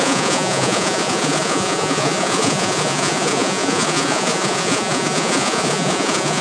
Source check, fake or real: fake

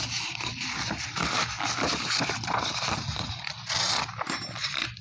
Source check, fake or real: real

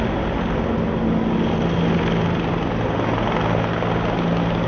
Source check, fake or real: real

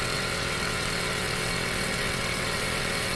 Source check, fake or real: fake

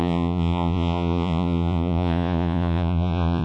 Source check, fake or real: fake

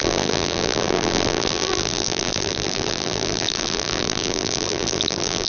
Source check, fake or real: fake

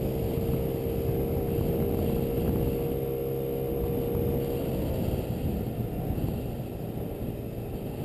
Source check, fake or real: real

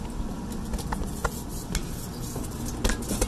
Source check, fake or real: real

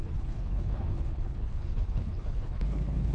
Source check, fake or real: fake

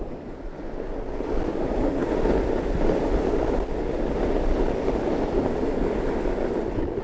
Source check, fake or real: real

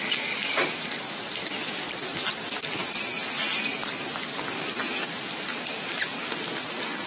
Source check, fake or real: real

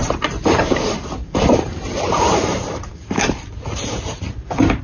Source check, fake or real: fake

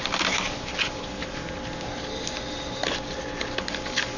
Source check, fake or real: real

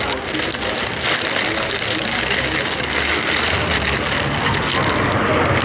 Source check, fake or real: real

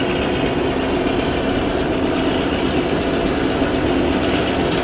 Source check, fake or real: real